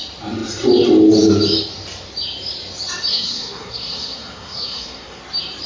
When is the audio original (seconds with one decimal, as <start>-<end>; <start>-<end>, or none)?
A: 0.0-3.1; 5.2-5.7

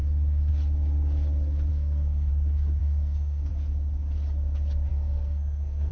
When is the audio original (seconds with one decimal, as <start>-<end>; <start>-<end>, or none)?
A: 0.0-1.7; 2.3-2.8; 3.5-4.9

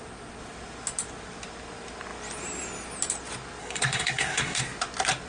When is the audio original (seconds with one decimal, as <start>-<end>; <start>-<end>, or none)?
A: 0.0-3.6; 4.6-5.3

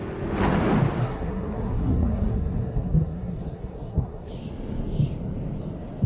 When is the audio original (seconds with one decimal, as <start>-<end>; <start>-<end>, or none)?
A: 0.0-1.0; 4.3-6.1

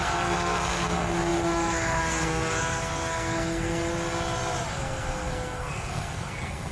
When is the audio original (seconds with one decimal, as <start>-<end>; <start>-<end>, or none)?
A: 3.8-4.7

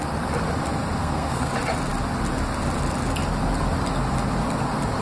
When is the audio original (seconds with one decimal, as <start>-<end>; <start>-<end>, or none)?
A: 0.0-1.0; 1.5-5.0

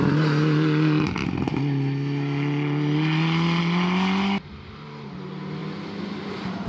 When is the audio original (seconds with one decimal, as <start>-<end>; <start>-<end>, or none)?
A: 0.0-6.7